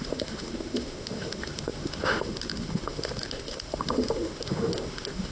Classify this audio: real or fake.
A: fake